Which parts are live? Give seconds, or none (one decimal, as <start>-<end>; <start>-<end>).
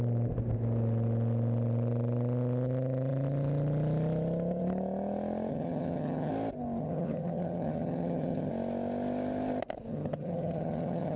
0.0-5.5; 6.3-6.8; 8.5-9.9